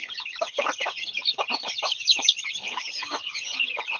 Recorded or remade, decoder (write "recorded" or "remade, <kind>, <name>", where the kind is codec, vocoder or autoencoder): remade, codec, HILCodec